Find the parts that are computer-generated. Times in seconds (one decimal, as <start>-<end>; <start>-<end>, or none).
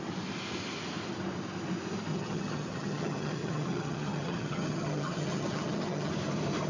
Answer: 2.1-6.1